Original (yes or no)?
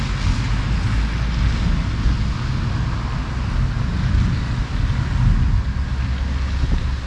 yes